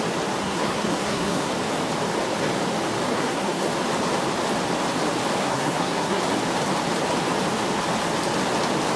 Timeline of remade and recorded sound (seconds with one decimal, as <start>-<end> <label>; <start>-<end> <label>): 0.0-0.4 recorded; 0.4-1.5 remade; 1.5-3.1 recorded; 3.1-3.7 remade; 3.7-5.4 recorded; 5.4-6.2 remade; 6.2-9.0 recorded